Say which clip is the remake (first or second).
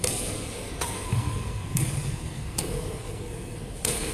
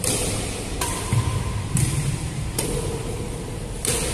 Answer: first